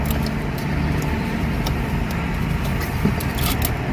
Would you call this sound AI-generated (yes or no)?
no